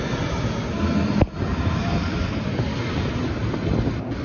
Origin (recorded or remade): recorded